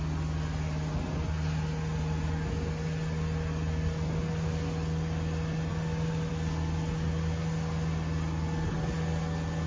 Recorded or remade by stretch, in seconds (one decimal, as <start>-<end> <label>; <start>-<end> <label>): 0.0-9.7 recorded